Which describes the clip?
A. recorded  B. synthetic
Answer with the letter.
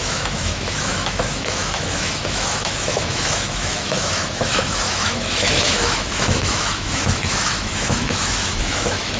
B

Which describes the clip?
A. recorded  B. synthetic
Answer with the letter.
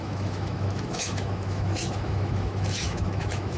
B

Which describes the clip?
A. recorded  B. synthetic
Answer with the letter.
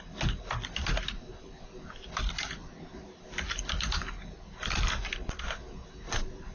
A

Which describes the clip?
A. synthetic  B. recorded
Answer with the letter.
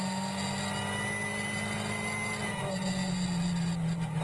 B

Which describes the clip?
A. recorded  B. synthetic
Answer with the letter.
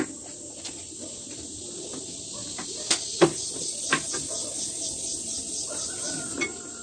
A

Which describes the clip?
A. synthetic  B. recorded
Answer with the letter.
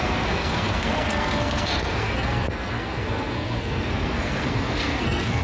A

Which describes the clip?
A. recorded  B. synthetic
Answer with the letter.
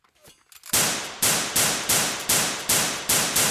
A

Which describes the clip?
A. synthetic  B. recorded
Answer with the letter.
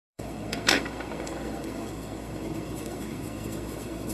A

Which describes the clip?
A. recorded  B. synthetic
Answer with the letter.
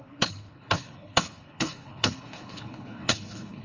B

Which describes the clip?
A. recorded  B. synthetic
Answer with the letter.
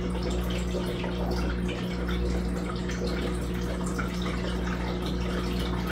A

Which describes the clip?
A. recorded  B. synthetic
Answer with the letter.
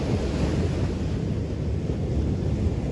A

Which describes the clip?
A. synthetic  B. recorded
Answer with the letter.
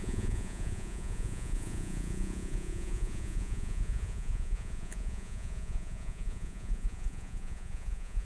A